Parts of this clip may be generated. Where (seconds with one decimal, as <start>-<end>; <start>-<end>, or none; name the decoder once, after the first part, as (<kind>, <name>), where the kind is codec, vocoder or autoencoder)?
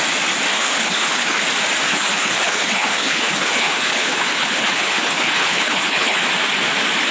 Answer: 0.5-1.4 (codec, HILCodec); 1.9-6.2